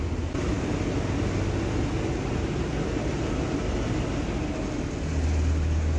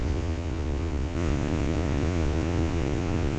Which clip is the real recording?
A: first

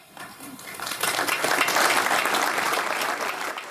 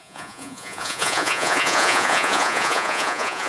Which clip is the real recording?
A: first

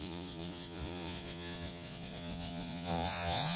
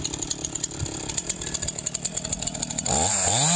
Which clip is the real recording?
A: second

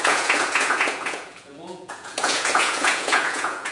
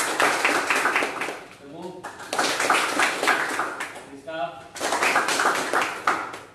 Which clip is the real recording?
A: second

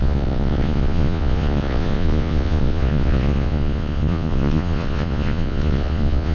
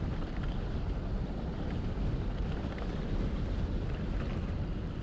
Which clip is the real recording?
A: second